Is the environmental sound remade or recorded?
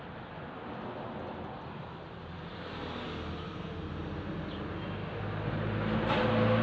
recorded